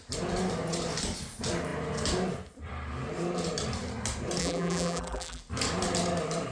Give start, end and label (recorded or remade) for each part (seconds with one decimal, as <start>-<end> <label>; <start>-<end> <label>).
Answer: 0.0-4.4 recorded; 4.4-5.4 remade; 5.4-6.5 recorded